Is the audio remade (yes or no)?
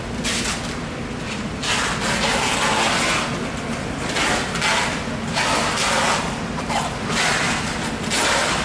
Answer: no